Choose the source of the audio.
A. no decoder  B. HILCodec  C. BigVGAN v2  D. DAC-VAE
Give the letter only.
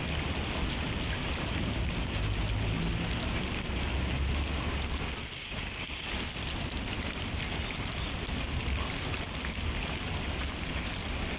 A